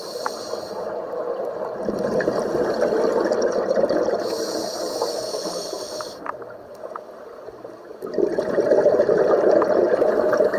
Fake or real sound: real